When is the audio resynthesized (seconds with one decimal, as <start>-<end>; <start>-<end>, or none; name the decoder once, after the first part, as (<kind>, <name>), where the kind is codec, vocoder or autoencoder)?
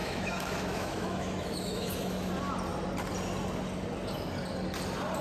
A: 0.0-2.3 (autoencoder, DAC-VAE)